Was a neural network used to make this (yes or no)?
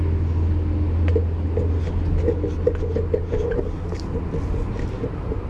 no